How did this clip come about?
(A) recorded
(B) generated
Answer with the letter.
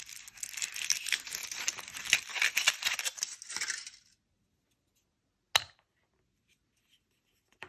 A